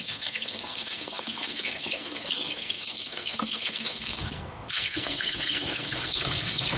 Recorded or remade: remade